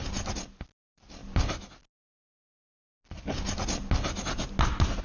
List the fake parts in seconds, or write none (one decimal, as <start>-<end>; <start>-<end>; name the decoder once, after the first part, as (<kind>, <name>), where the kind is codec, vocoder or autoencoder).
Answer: none